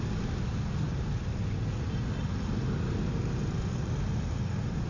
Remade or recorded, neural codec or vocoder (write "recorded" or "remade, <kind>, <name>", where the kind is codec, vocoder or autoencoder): recorded